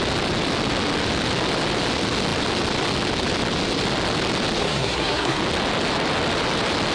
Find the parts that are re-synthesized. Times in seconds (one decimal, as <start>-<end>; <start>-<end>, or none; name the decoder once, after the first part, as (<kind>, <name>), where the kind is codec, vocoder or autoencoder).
4.6-5.4 (codec, SNAC)